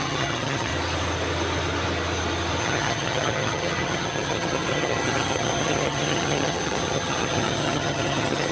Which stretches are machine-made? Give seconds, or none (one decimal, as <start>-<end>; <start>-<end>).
0.0-0.7; 2.6-8.5